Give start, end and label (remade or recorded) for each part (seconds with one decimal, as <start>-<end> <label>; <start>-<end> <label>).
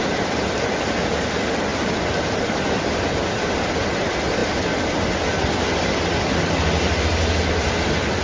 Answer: 0.0-8.2 recorded